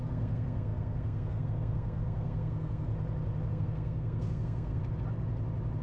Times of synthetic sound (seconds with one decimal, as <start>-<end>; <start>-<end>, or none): 0.0-2.9; 3.5-4.8